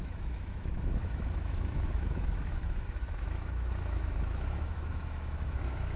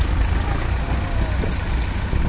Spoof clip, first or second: first